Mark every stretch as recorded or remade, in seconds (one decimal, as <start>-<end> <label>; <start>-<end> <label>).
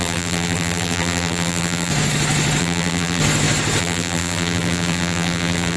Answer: 0.0-1.9 remade; 1.9-2.6 recorded; 2.6-3.2 remade; 3.2-3.8 recorded; 3.8-5.8 remade